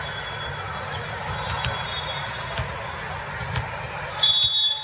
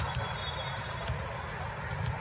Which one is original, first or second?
first